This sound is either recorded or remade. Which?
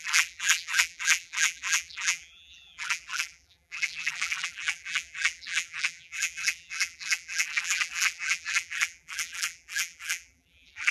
remade